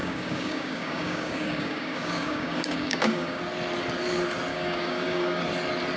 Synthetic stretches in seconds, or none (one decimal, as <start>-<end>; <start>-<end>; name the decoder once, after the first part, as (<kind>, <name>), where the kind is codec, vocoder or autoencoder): 0.0-3.4 (codec, DAC); 4.5-5.4